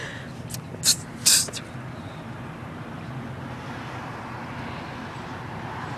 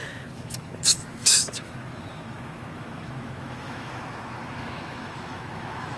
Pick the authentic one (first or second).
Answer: first